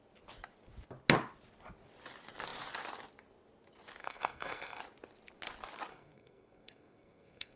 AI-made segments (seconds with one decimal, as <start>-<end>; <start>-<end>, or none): 4.0-4.8; 5.9-7.6